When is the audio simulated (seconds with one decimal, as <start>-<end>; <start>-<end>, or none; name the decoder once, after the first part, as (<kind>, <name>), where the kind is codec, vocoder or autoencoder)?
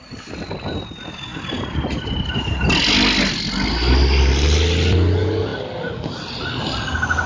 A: none